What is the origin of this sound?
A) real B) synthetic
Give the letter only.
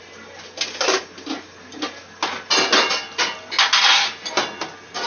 A